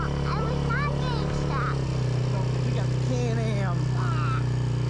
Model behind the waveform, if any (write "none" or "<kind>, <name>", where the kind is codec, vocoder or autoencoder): none